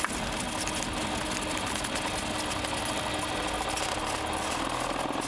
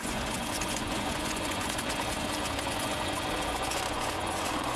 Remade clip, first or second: second